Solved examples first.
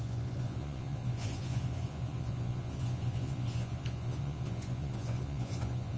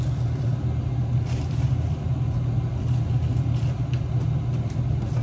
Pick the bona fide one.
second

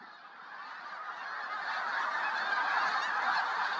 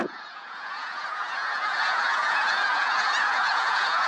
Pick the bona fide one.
first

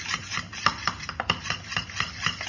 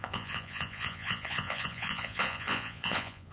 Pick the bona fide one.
first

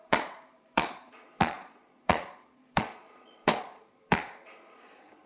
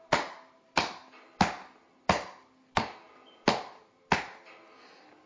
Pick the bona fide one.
second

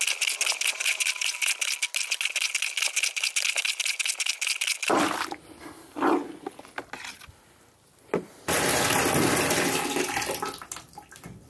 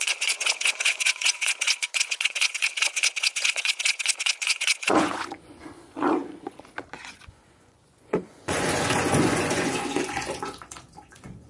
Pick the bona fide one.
first